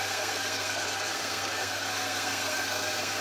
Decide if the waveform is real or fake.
fake